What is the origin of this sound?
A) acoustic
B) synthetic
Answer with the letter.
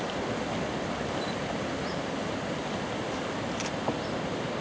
A